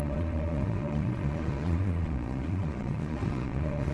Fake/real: fake